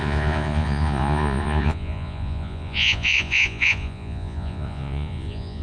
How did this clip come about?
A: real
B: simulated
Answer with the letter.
B